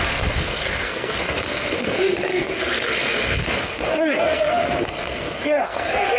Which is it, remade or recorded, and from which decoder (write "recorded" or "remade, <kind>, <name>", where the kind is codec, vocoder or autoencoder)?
remade, codec, SNAC